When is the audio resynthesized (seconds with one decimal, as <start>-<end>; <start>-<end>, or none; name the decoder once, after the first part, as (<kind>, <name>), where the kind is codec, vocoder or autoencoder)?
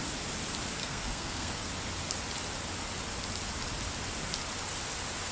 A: 0.8-1.7 (codec, SNAC)